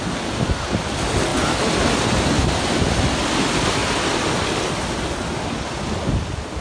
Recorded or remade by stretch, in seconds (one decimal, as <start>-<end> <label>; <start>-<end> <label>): 0.0-6.6 recorded